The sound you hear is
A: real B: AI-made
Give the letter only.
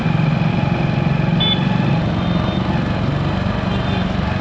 A